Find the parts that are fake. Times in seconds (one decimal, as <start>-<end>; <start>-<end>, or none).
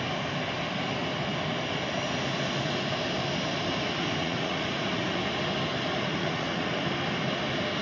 4.2-5.2; 6.1-6.8